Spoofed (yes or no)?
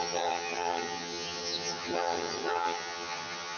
yes